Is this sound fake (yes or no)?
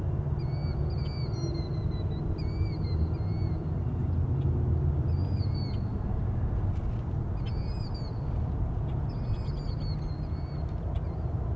no